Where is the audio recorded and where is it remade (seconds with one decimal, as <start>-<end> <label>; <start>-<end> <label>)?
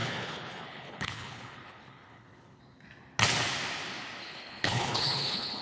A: 0.0-2.6 remade; 2.6-4.2 recorded; 4.2-5.6 remade